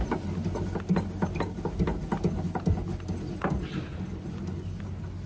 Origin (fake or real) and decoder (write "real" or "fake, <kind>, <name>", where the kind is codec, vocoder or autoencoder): real